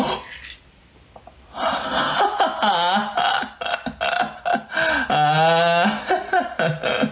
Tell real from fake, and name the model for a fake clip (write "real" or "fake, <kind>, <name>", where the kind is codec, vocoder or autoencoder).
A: real